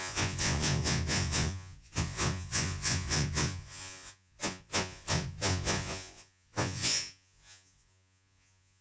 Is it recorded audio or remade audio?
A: remade